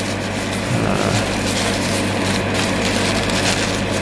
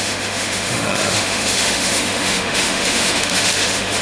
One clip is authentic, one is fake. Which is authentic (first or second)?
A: first